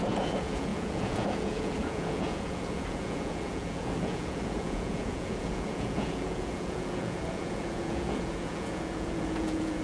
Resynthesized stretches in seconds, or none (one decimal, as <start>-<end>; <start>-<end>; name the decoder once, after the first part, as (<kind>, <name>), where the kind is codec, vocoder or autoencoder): 0.0-9.8 (vocoder, Vocos)